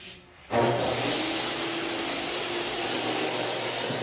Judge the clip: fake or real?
real